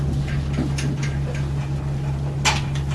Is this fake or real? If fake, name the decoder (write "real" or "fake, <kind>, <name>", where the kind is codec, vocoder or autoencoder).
real